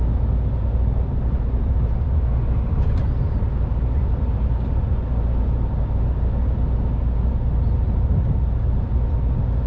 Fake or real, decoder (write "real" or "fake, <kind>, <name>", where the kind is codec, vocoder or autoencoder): real